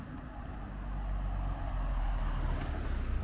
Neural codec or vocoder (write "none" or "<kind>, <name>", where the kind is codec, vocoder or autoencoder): none